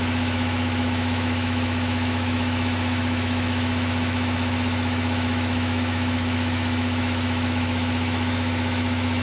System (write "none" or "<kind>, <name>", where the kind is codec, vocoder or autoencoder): autoencoder, DAC-VAE